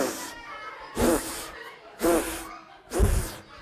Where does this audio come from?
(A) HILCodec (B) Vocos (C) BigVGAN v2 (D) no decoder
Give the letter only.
D